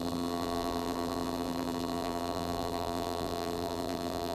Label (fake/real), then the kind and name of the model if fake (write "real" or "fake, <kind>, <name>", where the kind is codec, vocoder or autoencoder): fake, vocoder, BigVGAN v2